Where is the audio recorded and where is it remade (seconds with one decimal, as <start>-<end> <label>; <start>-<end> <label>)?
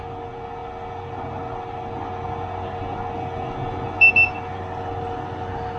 0.0-5.8 recorded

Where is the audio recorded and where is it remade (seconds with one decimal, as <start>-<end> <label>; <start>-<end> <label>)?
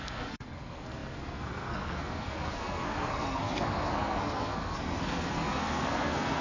0.0-6.4 remade